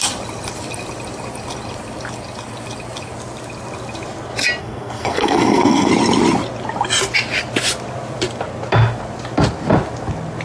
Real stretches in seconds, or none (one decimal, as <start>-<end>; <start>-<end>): 0.0-4.6; 5.9-10.4